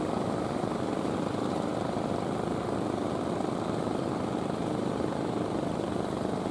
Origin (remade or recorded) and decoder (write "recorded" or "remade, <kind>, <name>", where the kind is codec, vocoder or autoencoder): recorded